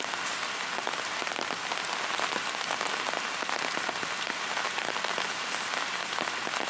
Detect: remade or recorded recorded